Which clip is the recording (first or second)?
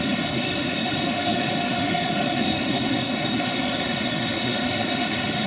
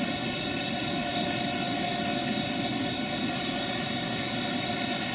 second